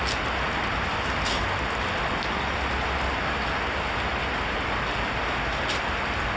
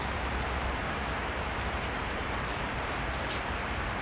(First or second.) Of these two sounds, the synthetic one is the second